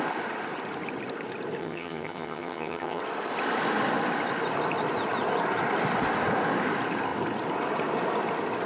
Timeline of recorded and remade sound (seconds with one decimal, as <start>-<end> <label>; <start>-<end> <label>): 0.0-1.6 recorded; 1.6-3.0 remade; 3.0-8.7 recorded